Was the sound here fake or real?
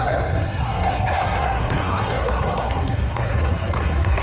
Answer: fake